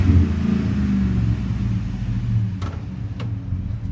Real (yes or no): yes